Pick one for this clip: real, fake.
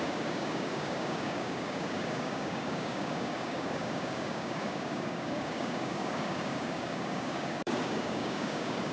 fake